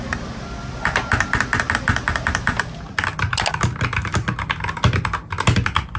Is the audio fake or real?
real